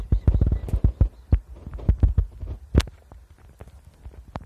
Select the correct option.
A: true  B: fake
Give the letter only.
A